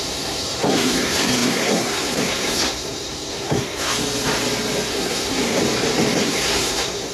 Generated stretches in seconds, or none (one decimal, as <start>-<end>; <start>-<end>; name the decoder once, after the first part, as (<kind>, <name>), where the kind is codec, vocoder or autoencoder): 0.0-3.9 (codec, SNAC); 4.9-5.6; 6.2-7.1